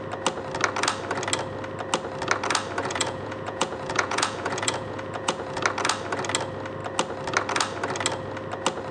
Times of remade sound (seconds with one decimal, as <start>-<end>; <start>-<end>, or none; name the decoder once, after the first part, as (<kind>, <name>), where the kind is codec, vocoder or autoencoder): 2.8-5.6 (vocoder, Vocos)